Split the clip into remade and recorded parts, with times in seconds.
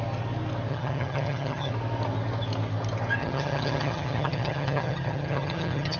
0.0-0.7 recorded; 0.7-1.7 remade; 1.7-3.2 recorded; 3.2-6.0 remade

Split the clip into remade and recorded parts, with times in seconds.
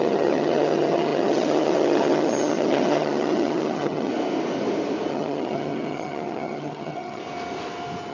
0.0-4.1 remade; 4.1-5.1 recorded; 5.1-7.2 remade; 7.2-8.1 recorded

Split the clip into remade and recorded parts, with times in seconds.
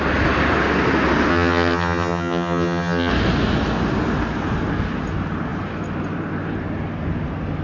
0.0-1.3 recorded; 1.3-3.1 remade; 3.1-7.6 recorded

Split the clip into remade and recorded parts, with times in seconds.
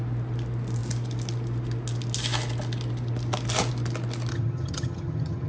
0.0-4.3 recorded; 4.3-5.5 remade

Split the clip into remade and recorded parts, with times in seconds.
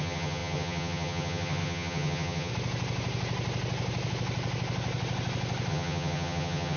0.0-2.5 remade; 2.5-5.7 recorded; 5.7-6.8 remade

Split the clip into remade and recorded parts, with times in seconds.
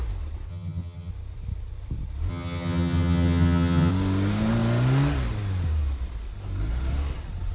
0.0-0.5 recorded; 0.5-1.1 remade; 1.1-2.3 recorded; 2.3-3.9 remade; 3.9-7.5 recorded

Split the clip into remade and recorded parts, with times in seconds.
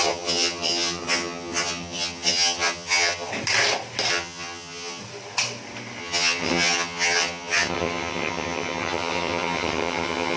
0.0-3.3 remade; 3.3-4.1 recorded; 4.1-5.0 remade; 5.0-6.0 recorded; 6.0-10.4 remade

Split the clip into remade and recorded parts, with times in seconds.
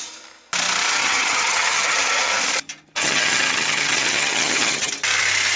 0.0-1.0 recorded; 1.0-2.4 remade; 2.4-3.0 recorded; 3.0-4.9 remade; 4.9-5.6 recorded